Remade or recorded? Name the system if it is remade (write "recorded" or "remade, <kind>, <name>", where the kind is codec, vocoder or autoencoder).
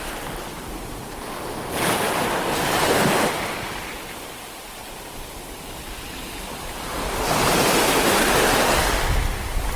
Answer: recorded